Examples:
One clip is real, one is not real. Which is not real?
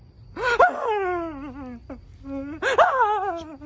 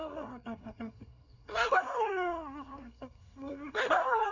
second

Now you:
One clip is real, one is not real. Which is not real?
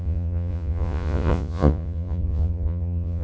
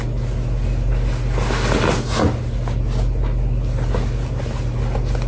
first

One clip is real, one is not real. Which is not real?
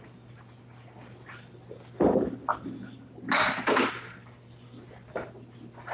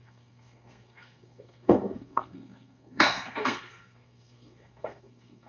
second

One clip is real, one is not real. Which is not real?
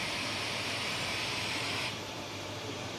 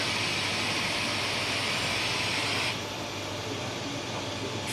first